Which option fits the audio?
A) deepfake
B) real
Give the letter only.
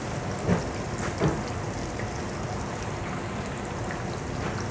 B